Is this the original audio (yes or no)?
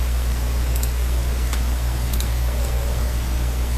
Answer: no